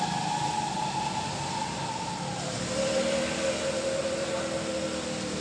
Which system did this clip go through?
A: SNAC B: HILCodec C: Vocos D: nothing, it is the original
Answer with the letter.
D